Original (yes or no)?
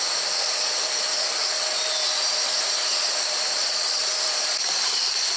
yes